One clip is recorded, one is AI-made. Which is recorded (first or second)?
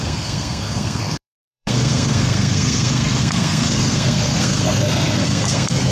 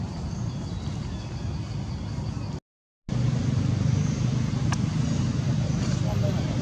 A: second